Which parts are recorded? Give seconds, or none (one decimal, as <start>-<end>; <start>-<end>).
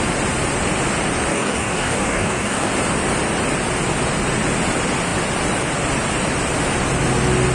0.0-1.3; 2.7-7.5